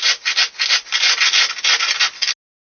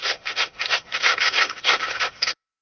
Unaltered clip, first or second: first